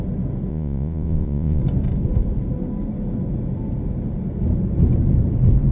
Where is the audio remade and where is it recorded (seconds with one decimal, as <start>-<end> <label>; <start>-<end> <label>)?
0.0-0.5 recorded; 0.5-1.6 remade; 1.6-5.7 recorded